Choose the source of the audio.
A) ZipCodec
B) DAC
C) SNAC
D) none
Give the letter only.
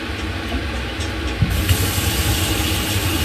D